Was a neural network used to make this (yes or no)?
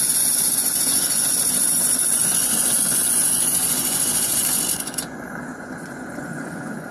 yes